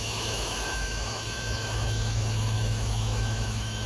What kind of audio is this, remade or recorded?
remade